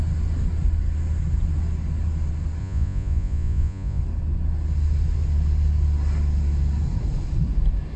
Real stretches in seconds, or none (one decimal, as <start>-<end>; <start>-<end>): 0.0-2.6; 4.0-8.0